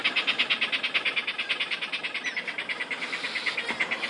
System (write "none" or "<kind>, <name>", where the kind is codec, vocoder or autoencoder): none